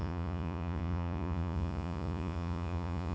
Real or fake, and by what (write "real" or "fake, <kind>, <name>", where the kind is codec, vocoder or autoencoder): fake, vocoder, Vocos